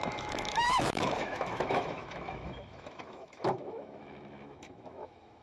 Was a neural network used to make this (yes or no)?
yes